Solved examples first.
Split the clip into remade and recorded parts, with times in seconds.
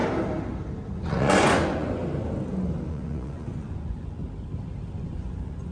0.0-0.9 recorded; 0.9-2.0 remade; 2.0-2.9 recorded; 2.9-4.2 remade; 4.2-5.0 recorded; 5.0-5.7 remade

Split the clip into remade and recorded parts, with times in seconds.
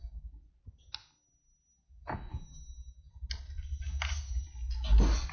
0.0-5.3 recorded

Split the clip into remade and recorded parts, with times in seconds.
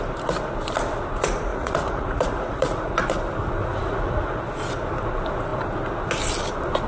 0.0-1.5 recorded; 1.5-2.9 remade; 2.9-3.6 recorded; 3.6-4.4 remade; 4.4-6.9 recorded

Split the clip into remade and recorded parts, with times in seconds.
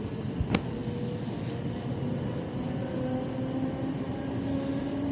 0.0-5.1 recorded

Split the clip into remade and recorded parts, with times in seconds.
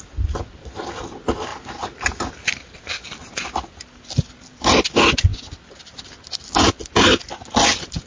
0.0-8.1 recorded